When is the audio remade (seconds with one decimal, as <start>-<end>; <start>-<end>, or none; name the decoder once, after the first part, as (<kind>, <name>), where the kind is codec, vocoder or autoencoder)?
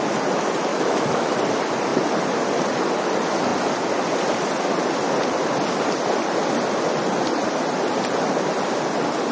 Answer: 0.7-1.3 (autoencoder, DAC-VAE)